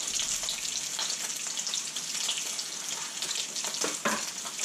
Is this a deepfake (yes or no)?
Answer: no